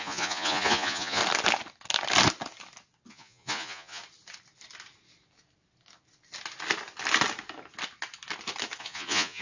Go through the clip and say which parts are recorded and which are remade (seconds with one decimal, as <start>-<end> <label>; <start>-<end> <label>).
0.0-1.2 remade; 1.2-3.1 recorded; 3.1-4.0 remade; 4.0-8.8 recorded; 8.8-9.4 remade